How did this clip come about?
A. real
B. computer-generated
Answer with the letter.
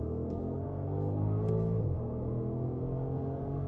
B